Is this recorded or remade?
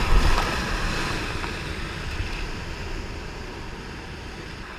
recorded